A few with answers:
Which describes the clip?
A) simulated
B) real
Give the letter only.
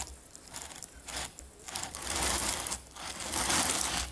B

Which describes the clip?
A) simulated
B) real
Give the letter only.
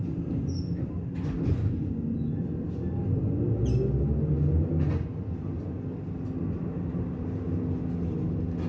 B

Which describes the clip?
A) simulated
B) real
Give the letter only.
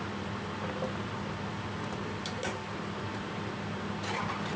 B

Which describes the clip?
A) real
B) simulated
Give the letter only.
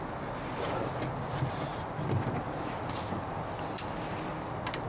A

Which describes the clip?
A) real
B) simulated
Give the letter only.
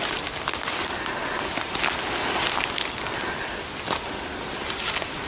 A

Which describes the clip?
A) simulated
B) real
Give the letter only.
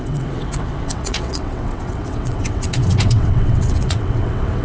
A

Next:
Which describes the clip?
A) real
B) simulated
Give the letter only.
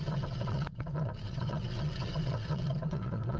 B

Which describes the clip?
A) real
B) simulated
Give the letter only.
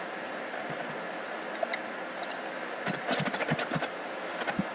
A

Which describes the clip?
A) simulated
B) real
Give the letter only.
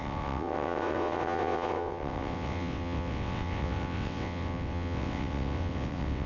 A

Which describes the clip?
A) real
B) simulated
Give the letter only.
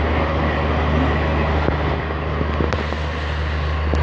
A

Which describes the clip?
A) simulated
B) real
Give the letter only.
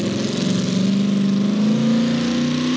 B